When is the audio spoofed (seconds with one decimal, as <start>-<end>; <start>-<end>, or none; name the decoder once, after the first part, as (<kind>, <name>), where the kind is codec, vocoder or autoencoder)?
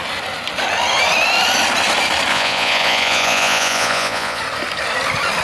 2.3-4.4 (vocoder, Vocos)